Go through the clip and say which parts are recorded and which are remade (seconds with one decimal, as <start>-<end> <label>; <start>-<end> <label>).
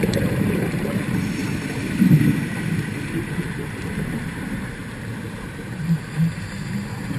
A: 0.0-4.8 remade; 4.8-5.3 recorded; 5.3-7.2 remade